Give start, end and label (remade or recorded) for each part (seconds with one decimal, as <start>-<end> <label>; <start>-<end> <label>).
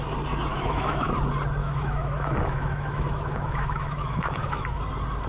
0.0-0.5 recorded; 0.5-1.1 remade; 1.1-1.6 recorded; 1.6-4.8 remade; 4.8-5.3 recorded